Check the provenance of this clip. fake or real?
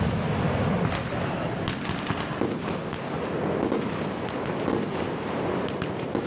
real